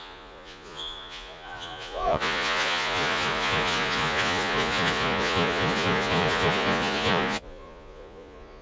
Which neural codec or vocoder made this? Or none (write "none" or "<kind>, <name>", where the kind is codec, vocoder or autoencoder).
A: vocoder, Vocos